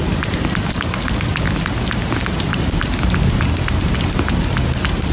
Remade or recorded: recorded